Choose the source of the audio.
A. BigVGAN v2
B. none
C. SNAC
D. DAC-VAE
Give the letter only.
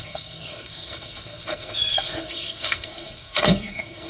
C